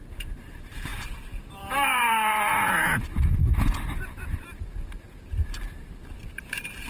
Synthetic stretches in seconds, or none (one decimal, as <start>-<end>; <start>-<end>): 0.0-6.9